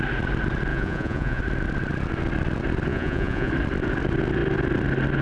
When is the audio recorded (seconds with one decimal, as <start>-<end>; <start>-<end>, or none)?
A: 0.0-0.7; 1.4-2.9; 3.5-5.2